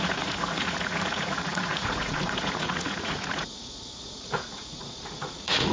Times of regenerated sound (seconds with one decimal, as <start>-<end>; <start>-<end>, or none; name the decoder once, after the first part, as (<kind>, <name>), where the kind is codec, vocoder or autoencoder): 0.0-5.7 (vocoder, Vocos)